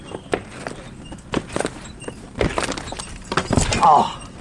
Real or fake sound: real